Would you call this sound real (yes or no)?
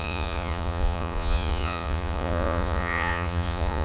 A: no